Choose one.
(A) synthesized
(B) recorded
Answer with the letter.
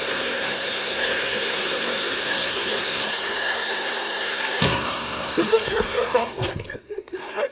A